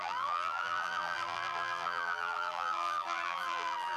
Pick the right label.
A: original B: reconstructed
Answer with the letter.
B